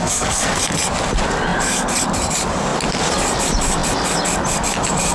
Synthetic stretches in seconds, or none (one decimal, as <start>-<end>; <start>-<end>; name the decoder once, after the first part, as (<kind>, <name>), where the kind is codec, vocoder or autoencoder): 0.0-0.6 (codec, SNAC)